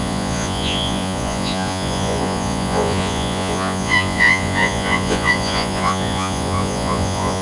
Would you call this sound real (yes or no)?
no